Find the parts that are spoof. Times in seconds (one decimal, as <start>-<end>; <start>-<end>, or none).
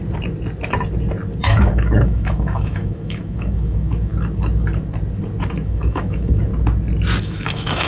1.4-4.1; 5.5-6.5; 7.2-7.9